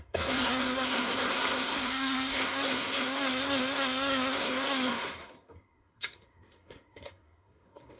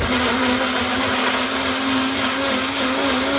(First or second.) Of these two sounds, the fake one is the first